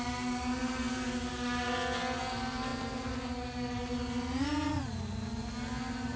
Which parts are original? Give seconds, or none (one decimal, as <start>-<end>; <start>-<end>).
0.0-6.2